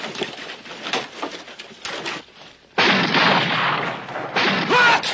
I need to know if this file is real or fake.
real